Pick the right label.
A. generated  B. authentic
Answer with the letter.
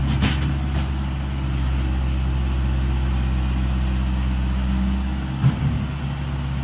B